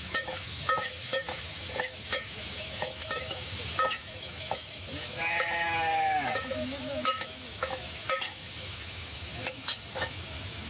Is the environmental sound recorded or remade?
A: remade